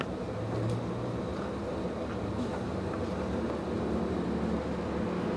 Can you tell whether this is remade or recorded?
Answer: recorded